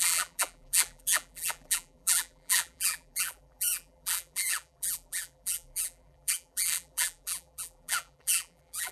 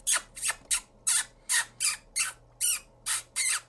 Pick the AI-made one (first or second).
first